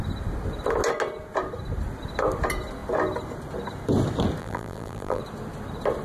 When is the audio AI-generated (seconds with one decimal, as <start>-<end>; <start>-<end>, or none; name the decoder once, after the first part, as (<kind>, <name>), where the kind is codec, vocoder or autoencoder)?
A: 4.4-5.2 (vocoder, BigVGAN v2)